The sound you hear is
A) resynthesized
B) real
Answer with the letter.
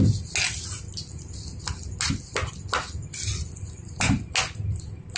B